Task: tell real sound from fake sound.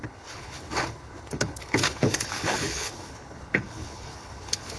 fake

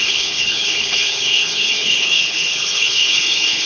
fake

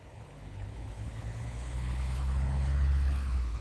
fake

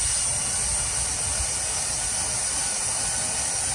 real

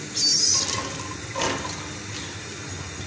real